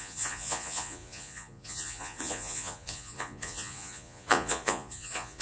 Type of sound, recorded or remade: remade